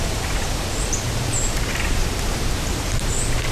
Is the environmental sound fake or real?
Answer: fake